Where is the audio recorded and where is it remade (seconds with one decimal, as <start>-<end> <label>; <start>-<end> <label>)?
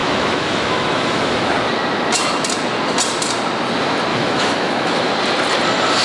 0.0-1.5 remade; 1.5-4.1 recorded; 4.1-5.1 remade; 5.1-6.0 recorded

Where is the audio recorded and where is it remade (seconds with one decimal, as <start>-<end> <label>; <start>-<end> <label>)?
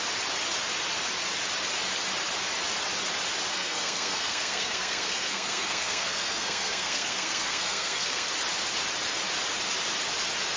0.0-3.5 recorded; 3.5-8.3 remade; 8.3-10.6 recorded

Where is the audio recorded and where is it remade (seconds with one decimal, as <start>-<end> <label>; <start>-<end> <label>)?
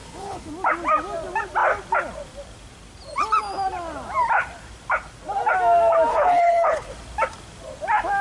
0.0-0.5 remade; 0.5-6.1 recorded; 6.1-6.9 remade; 6.9-8.2 recorded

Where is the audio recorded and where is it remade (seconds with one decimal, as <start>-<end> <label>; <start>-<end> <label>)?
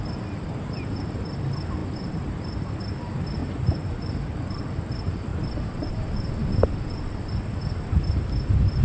0.0-1.8 recorded; 1.8-2.8 remade; 2.8-3.4 recorded; 3.4-4.7 remade; 4.7-5.3 recorded; 5.3-5.9 remade; 5.9-8.8 recorded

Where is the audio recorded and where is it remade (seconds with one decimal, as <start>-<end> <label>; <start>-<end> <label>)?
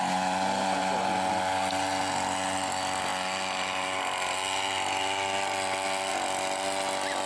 0.0-7.3 recorded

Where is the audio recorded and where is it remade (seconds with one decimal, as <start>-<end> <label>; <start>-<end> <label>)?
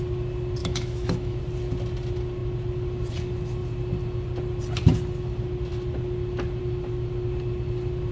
0.0-0.6 recorded; 0.6-1.4 remade; 1.4-8.1 recorded